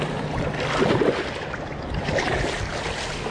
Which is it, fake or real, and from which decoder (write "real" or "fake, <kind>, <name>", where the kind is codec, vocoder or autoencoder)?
real